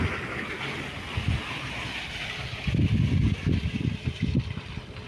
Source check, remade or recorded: recorded